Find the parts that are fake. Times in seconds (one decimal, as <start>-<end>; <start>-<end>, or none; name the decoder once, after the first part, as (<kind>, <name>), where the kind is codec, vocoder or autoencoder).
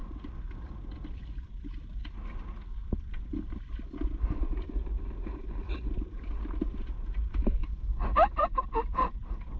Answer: 1.2-2.0 (vocoder, BigVGAN v2); 6.5-7.6; 8.7-9.6